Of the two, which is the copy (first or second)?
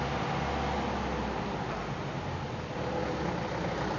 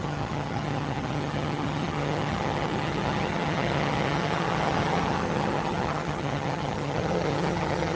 second